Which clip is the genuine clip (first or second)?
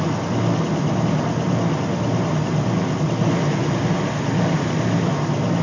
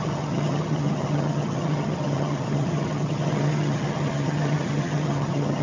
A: first